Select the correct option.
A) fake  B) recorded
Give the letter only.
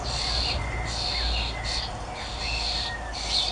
B